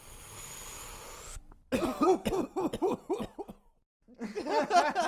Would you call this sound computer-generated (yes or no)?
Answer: no